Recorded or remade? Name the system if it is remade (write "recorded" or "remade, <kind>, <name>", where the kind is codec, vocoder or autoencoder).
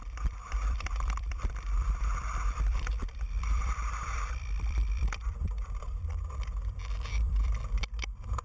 remade, vocoder, BigVGAN v2